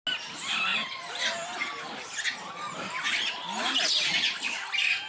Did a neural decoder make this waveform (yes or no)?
no